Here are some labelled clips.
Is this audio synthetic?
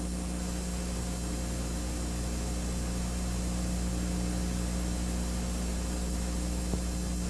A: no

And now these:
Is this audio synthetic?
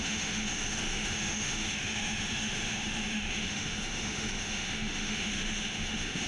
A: yes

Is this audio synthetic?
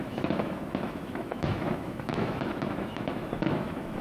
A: yes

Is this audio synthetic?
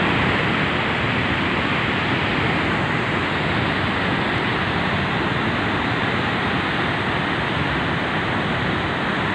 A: no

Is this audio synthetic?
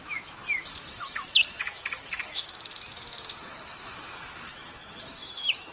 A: yes